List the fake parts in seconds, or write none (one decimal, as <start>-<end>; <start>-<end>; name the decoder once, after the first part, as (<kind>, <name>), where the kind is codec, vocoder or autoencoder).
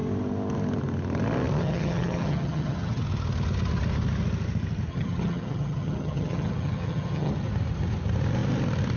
1.6-3.0 (vocoder, HiFi-GAN); 4.9-7.3